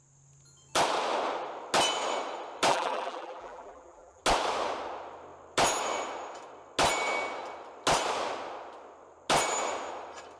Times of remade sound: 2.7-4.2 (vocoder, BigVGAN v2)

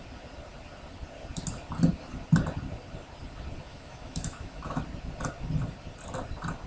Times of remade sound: 3.7-4.8 (autoencoder, DAC-VAE)

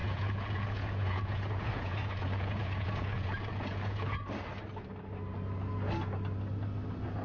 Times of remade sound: 0.0-4.3 (vocoder, Vocos)